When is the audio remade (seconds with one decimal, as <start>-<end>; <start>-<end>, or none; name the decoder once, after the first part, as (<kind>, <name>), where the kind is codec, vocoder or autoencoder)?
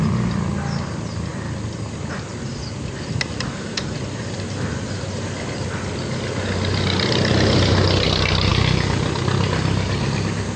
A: none